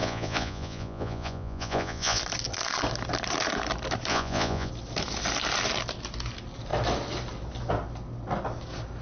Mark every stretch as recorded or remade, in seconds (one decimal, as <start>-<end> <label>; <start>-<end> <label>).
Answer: 0.0-2.2 remade; 2.2-4.1 recorded; 4.1-4.7 remade; 4.7-9.0 recorded